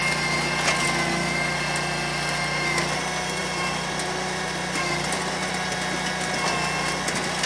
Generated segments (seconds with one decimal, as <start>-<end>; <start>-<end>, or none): 3.4-5.5